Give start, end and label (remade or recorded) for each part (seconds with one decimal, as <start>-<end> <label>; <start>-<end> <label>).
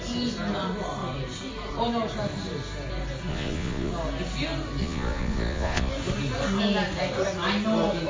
0.0-3.3 recorded; 3.3-3.9 remade; 3.9-4.8 recorded; 4.8-5.9 remade; 5.9-8.1 recorded